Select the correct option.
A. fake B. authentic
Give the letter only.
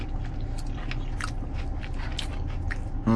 B